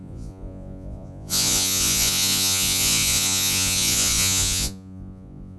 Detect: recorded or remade remade